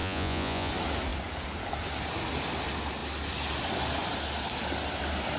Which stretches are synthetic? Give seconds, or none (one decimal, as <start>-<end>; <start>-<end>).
0.0-0.7